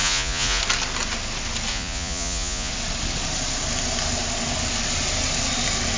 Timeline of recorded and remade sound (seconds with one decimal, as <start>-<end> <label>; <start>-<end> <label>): 0.0-0.6 remade; 0.6-1.7 recorded; 1.7-2.7 remade; 2.7-6.0 recorded